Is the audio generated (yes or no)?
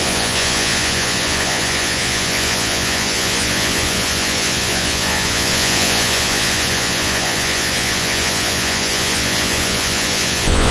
yes